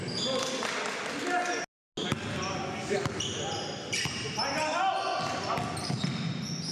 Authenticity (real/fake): real